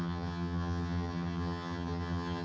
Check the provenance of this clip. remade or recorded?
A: remade